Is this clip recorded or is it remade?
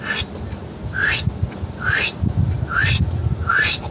recorded